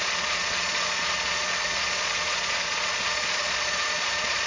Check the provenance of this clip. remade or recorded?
remade